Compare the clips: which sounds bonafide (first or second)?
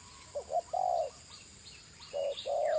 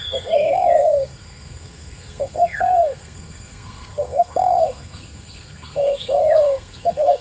first